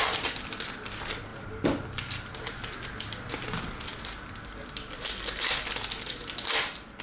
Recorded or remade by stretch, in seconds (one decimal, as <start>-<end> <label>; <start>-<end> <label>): 0.0-7.0 recorded